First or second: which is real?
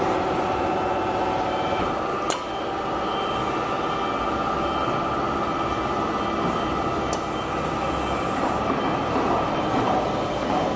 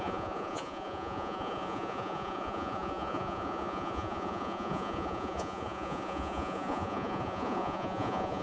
first